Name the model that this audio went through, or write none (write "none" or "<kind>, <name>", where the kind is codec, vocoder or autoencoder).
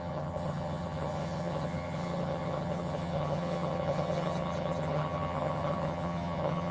vocoder, HiFi-GAN